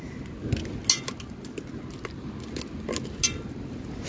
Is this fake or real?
real